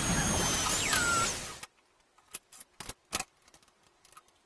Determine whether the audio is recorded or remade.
recorded